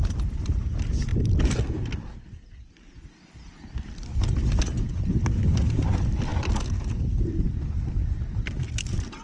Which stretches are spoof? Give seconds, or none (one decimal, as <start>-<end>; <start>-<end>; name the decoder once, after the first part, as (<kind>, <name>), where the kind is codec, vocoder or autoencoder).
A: none